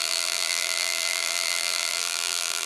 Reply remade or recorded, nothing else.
remade